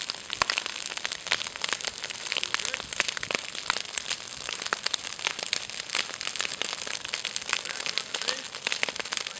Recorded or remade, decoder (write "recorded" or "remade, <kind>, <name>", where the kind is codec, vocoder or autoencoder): recorded